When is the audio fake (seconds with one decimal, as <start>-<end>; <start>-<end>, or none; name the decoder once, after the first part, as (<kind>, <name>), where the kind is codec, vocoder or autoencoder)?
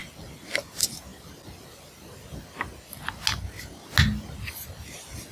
none